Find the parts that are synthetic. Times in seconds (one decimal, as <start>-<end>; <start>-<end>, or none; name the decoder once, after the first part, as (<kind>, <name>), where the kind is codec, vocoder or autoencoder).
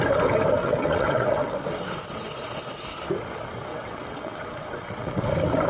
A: 0.6-1.6 (vocoder, WaveNeXt); 3.7-5.3